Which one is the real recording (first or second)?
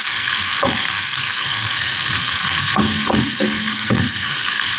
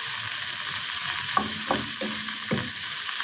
second